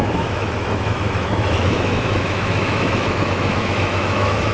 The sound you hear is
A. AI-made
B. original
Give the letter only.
A